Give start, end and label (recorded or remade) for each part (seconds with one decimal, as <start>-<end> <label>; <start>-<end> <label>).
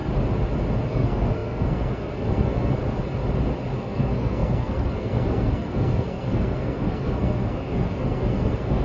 0.0-0.9 recorded; 0.9-2.8 remade; 2.8-3.8 recorded; 3.8-8.8 remade